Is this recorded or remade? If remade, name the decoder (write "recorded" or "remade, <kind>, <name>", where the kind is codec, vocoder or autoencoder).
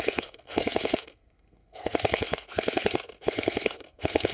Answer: remade, codec, SNAC